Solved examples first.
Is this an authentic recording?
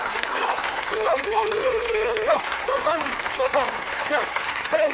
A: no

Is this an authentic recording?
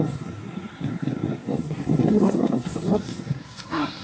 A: no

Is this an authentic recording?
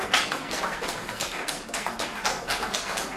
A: no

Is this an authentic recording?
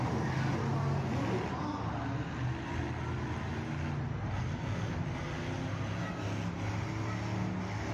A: yes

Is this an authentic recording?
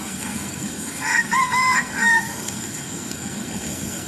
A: no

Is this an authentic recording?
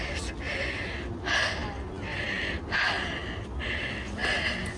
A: yes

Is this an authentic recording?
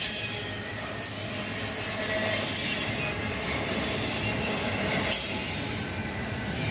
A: yes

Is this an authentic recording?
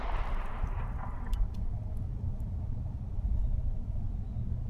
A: yes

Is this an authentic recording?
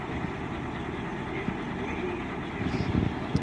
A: yes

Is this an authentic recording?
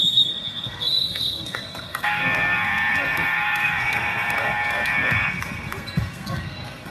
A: no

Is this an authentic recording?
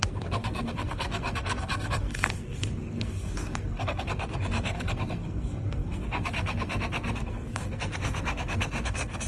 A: no